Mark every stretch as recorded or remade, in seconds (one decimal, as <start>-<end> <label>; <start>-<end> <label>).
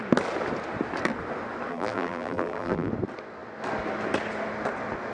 0.0-1.7 recorded; 1.7-2.9 remade; 2.9-5.1 recorded